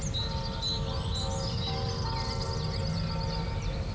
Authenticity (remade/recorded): recorded